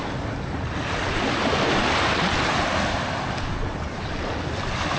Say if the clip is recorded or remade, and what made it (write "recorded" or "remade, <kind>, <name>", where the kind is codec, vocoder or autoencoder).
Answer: recorded